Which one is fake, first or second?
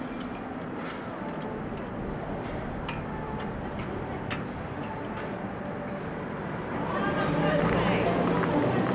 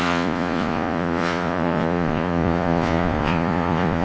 second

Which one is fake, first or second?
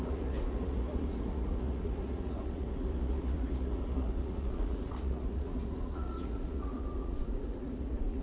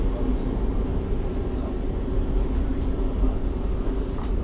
first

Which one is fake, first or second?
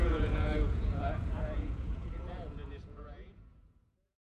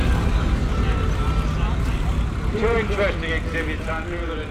first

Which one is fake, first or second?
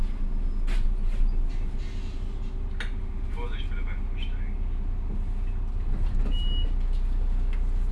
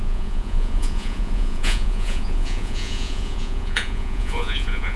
second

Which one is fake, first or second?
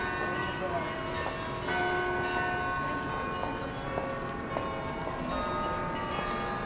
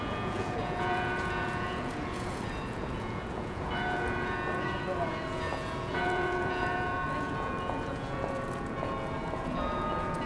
second